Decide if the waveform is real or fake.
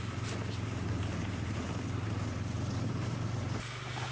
real